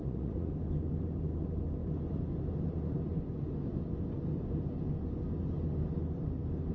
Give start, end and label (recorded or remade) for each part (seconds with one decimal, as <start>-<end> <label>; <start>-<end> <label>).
0.0-0.5 remade; 0.5-6.7 recorded